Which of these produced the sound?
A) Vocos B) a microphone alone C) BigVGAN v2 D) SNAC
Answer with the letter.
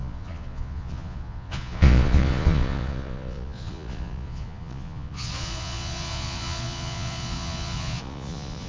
A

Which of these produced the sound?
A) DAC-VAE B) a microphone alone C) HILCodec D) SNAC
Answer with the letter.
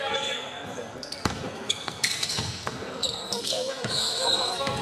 D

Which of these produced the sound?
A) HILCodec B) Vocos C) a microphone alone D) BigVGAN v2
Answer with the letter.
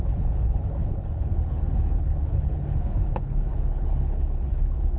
A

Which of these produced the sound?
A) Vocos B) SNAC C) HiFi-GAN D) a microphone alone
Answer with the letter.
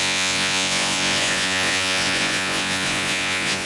A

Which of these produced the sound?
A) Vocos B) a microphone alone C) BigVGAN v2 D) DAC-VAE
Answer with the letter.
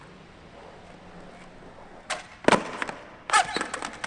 B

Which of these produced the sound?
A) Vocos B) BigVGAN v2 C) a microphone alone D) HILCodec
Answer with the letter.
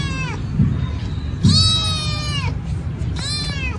C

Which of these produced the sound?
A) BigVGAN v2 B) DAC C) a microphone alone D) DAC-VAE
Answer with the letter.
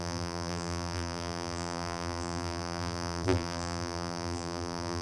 A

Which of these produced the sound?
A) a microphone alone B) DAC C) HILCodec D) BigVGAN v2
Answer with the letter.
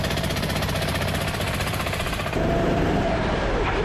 D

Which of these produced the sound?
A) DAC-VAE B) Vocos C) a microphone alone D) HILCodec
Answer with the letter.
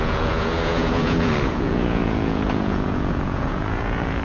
B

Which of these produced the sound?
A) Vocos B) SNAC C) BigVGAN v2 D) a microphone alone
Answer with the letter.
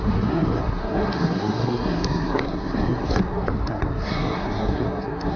B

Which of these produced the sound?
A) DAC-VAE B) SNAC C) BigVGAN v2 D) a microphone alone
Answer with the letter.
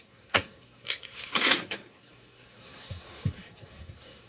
B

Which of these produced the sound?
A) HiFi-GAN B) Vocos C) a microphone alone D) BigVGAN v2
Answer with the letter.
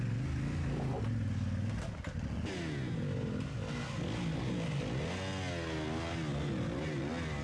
C